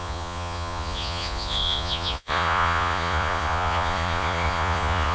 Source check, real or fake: fake